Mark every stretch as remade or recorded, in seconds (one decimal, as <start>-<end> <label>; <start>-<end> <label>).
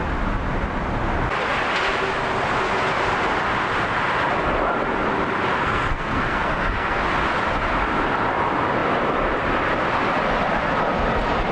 0.0-5.6 recorded; 5.6-7.0 remade; 7.0-11.5 recorded